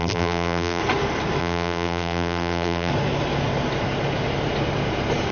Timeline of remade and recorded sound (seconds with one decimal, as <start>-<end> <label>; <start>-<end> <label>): 0.0-0.8 remade; 0.8-1.4 recorded; 1.4-2.9 remade; 2.9-5.3 recorded